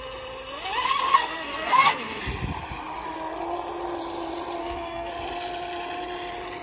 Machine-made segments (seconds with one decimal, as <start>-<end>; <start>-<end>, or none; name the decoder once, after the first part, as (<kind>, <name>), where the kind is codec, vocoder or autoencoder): 1.1-2.2 (codec, SNAC); 4.6-5.1